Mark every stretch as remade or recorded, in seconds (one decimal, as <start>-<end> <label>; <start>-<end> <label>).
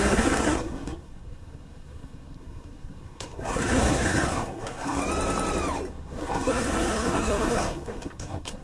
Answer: 0.0-5.0 remade; 5.0-5.9 recorded; 5.9-8.6 remade